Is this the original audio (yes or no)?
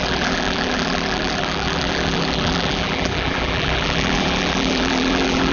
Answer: no